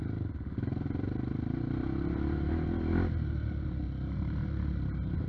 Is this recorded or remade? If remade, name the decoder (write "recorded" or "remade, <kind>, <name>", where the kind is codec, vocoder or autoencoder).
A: recorded